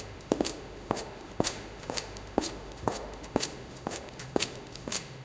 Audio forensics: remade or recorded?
remade